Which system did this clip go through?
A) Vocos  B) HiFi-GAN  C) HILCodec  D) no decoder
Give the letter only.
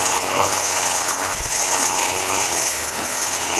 C